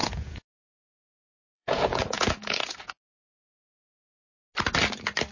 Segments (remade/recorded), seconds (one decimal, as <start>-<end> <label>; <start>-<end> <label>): 0.0-0.8 remade; 0.8-1.4 recorded; 1.4-3.9 remade; 3.9-5.3 recorded